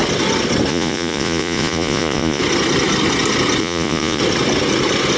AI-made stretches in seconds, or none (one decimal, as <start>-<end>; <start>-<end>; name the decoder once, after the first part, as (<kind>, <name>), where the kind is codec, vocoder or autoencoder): 0.7-2.4 (vocoder, Vocos); 3.6-4.2